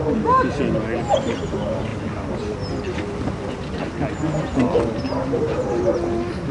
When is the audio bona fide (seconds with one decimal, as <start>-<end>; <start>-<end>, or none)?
0.0-6.5